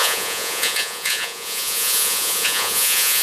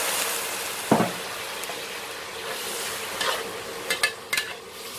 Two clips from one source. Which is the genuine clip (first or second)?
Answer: second